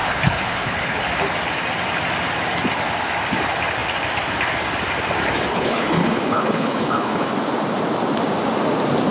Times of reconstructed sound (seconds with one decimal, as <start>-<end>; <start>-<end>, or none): 0.0-1.1; 5.5-7.3